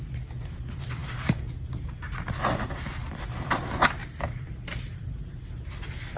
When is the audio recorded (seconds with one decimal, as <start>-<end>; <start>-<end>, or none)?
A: 0.0-4.0; 5.4-6.2

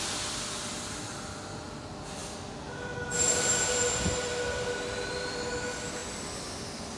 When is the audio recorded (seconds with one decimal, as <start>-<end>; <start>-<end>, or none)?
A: 0.0-7.0